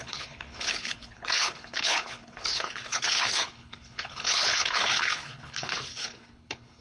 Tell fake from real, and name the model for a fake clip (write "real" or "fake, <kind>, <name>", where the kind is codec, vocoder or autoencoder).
fake, codec, HILCodec